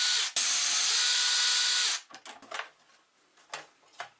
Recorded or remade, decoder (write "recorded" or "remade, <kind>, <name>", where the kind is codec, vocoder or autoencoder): recorded